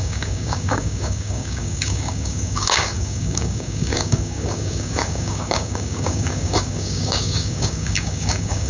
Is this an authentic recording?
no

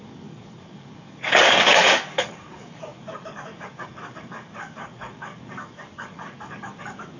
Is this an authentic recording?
no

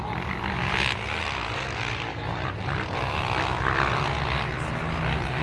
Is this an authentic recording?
yes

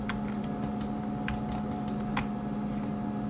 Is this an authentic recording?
yes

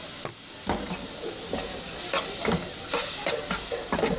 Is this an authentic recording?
yes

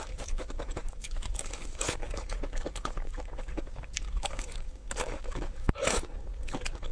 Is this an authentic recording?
no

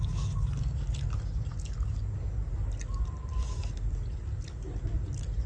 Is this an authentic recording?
yes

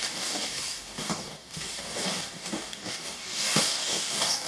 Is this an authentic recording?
no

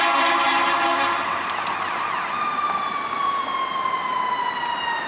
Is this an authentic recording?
yes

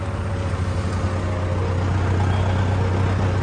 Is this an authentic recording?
yes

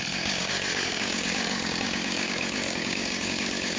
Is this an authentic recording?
no